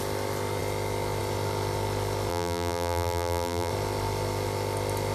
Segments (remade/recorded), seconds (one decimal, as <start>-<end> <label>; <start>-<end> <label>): 0.0-2.3 recorded; 2.3-3.7 remade; 3.7-5.1 recorded